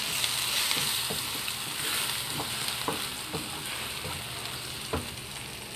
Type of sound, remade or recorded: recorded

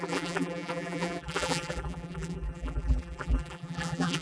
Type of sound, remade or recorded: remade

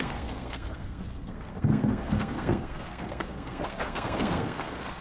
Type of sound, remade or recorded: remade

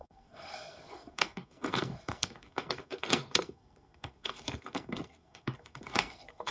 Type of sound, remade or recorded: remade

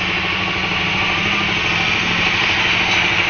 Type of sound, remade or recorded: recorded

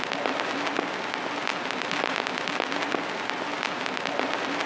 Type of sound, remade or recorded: recorded